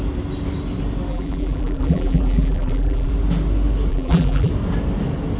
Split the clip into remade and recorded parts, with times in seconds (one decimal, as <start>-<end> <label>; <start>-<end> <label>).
0.0-1.1 recorded; 1.1-3.1 remade; 3.1-3.9 recorded; 3.9-4.5 remade; 4.5-5.4 recorded